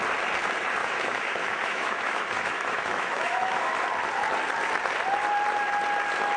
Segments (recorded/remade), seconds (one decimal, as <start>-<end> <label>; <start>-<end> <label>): 0.0-0.8 recorded; 0.8-3.8 remade; 3.8-6.4 recorded